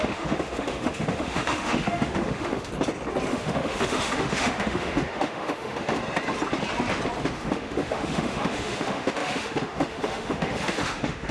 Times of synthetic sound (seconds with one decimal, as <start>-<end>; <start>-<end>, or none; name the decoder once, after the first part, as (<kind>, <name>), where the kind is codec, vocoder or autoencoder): 0.0-2.7 (autoencoder, DAC-VAE); 3.3-6.0; 7.2-11.3